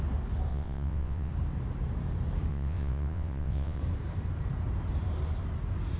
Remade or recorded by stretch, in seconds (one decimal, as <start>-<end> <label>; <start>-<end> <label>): 0.0-0.5 recorded; 0.5-1.3 remade; 1.3-2.5 recorded; 2.5-3.8 remade; 3.8-6.0 recorded